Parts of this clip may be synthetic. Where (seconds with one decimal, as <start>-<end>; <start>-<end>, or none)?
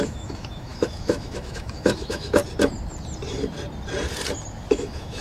0.0-2.4; 4.7-5.2